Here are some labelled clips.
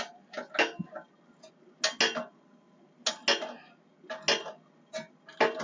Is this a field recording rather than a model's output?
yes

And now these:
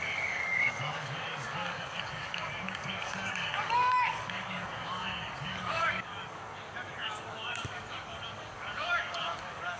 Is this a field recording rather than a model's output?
no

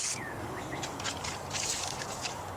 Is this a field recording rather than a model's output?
no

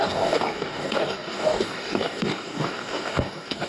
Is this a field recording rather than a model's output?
no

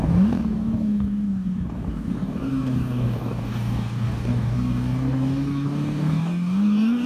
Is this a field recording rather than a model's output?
no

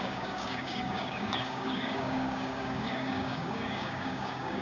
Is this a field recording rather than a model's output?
no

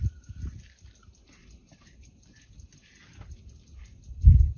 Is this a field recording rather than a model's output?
yes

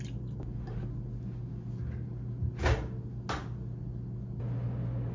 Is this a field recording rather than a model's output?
yes